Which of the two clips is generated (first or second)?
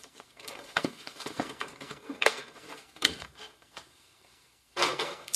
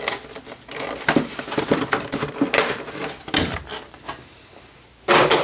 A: first